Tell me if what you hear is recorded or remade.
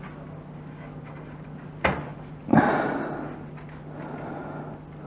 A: recorded